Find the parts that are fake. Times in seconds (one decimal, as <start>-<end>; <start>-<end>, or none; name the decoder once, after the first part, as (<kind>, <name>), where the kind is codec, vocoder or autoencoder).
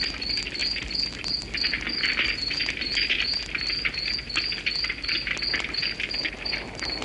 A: none